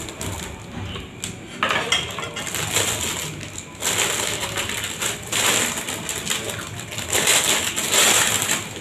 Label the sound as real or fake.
real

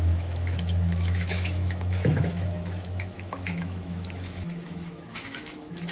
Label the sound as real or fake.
fake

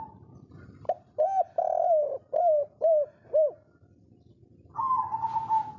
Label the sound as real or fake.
real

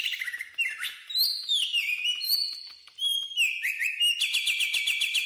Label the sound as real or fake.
real